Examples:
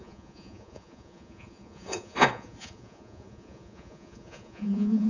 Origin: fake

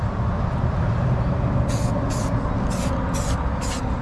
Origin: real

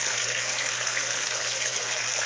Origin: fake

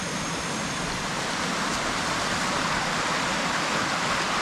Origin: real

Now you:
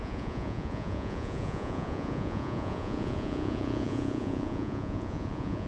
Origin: fake